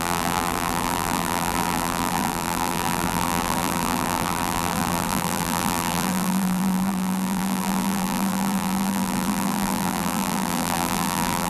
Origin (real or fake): fake